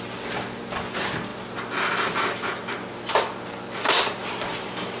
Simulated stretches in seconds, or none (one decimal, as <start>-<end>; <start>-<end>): none